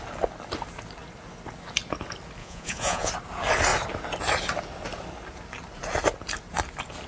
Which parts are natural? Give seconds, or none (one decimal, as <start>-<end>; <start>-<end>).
0.0-2.4; 3.1-7.1